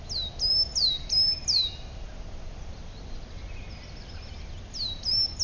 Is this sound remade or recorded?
recorded